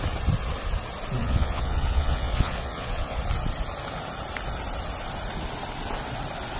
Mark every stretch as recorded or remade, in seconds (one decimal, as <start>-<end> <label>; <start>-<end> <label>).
0.0-1.2 recorded; 1.2-3.2 remade; 3.2-6.6 recorded